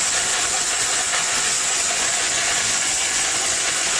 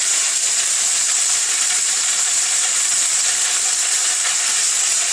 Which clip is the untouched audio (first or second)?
second